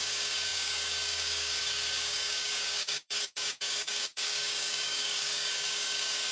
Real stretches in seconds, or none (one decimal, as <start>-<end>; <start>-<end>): none